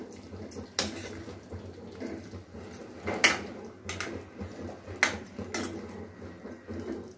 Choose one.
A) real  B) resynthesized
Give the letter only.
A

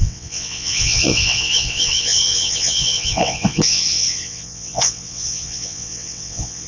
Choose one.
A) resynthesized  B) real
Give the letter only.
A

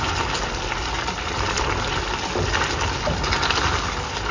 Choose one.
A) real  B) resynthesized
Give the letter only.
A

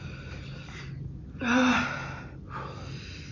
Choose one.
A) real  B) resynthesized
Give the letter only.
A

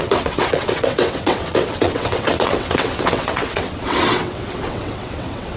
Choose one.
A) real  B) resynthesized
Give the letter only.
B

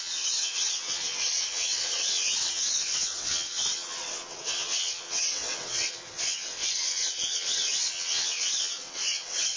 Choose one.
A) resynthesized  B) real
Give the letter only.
A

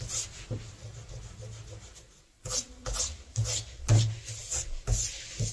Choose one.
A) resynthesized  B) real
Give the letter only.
B